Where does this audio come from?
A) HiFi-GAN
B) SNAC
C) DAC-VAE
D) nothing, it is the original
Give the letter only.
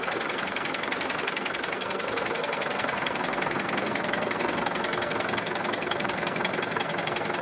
B